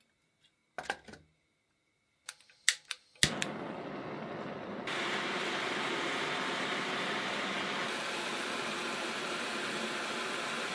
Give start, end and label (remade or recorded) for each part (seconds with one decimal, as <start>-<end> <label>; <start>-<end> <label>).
0.0-0.6 remade; 0.6-4.7 recorded; 4.7-7.8 remade; 7.8-8.7 recorded; 8.7-10.7 remade

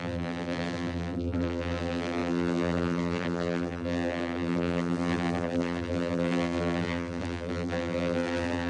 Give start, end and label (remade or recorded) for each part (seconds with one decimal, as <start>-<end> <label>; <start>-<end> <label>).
0.0-8.7 remade

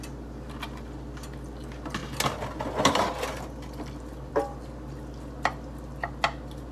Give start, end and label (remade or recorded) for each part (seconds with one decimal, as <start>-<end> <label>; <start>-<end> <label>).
0.0-6.7 recorded

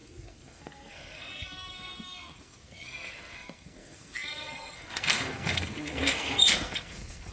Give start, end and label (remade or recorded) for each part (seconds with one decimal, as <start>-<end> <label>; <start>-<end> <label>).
0.0-7.3 remade

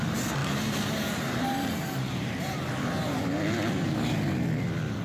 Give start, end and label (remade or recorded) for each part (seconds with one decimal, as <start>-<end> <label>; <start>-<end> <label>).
0.0-0.4 recorded; 0.4-3.4 remade; 3.4-5.0 recorded

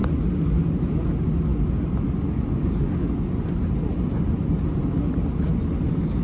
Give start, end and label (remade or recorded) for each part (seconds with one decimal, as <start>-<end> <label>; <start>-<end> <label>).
0.0-6.2 recorded

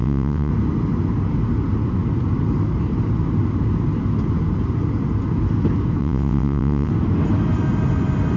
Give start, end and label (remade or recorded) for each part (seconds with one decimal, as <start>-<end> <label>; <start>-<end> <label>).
0.0-0.5 remade; 0.5-6.0 recorded; 6.0-6.9 remade; 6.9-8.4 recorded

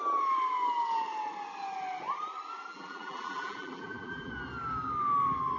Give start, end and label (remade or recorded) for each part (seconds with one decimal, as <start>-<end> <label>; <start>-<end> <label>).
0.0-2.7 recorded; 2.7-4.3 remade; 4.3-5.6 recorded